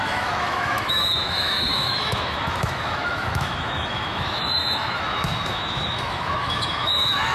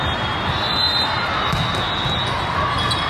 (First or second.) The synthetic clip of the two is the first